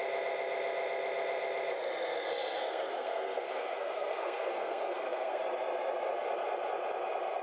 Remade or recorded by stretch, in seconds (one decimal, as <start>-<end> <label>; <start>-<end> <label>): 0.0-2.6 recorded; 2.6-5.4 remade; 5.4-7.4 recorded